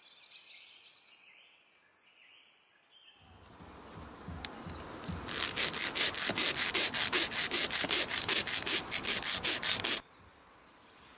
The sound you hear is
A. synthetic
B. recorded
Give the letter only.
B